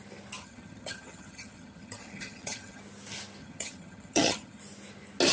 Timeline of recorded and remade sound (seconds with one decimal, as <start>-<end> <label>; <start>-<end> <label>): 0.0-0.4 recorded; 0.4-2.8 remade; 2.8-3.4 recorded; 3.4-4.6 remade; 4.6-5.3 recorded